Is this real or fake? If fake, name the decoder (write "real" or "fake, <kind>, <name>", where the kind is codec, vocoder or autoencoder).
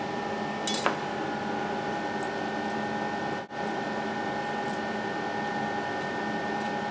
real